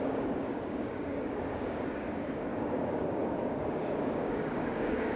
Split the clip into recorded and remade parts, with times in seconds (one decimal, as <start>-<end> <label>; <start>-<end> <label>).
0.0-5.2 remade